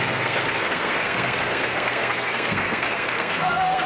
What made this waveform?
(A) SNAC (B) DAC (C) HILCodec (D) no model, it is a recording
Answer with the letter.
A